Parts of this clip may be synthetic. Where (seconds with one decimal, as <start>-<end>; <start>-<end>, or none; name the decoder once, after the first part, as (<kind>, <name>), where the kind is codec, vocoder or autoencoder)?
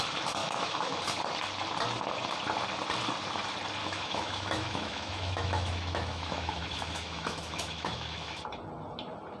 0.4-1.0 (autoencoder, DAC-VAE); 3.8-8.4